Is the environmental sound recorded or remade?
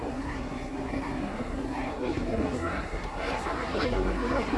remade